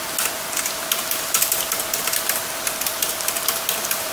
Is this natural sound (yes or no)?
yes